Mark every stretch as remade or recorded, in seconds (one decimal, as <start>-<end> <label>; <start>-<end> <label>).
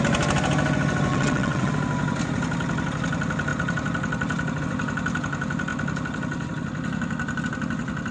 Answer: 0.0-1.1 recorded; 1.1-1.7 remade; 1.7-8.1 recorded